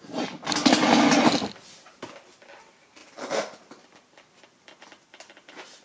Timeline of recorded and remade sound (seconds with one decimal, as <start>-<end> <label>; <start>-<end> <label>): 0.0-5.8 recorded